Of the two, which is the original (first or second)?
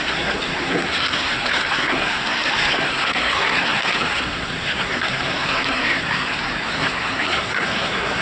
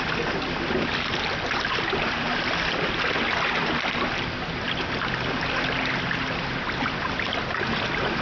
second